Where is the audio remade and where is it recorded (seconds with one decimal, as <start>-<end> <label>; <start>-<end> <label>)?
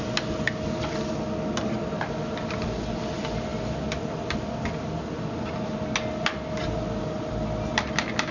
0.0-8.3 recorded